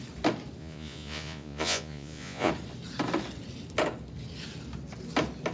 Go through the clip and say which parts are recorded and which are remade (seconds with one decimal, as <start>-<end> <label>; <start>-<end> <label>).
0.0-0.6 recorded; 0.6-2.5 remade; 2.5-5.5 recorded